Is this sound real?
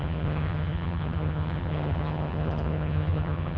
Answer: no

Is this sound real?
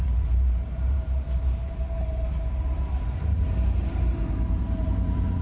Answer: no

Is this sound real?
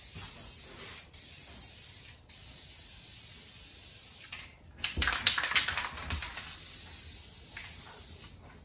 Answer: yes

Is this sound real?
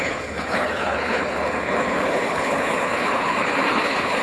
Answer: no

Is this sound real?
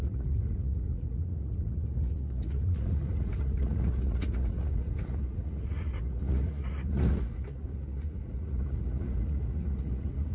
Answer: no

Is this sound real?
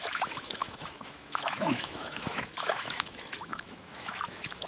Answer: no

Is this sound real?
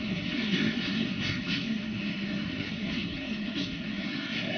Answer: no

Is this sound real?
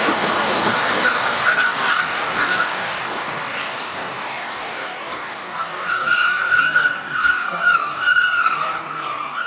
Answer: no